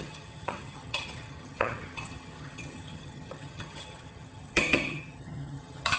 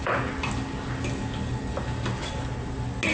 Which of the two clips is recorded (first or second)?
second